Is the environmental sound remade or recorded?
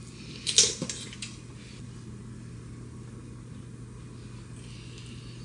recorded